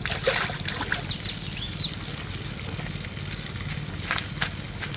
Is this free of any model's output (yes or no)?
yes